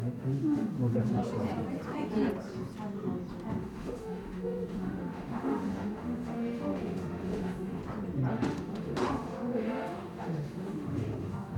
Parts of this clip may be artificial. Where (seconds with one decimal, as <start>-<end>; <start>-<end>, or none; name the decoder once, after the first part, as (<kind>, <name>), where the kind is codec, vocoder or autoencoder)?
0.0-1.2 (autoencoder, DAC-VAE); 3.6-7.8; 8.3-11.6